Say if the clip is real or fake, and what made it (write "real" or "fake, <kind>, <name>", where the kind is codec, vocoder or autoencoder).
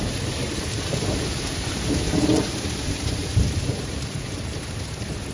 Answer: fake, vocoder, BigVGAN v2